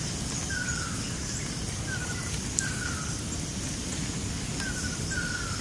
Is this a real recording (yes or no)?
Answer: yes